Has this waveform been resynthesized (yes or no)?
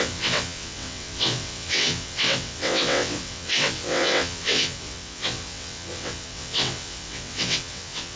yes